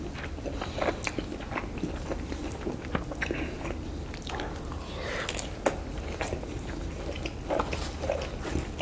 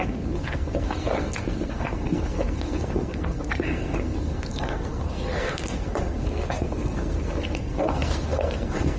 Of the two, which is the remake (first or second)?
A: second